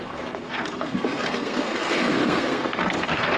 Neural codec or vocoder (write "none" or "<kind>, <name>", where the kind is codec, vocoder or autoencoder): codec, SNAC